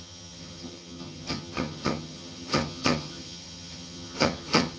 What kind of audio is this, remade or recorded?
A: remade